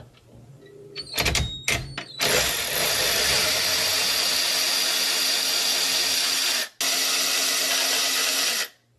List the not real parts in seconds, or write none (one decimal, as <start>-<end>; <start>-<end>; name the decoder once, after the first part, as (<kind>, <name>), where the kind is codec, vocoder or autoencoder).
2.6-4.1 (vocoder, BigVGAN v2)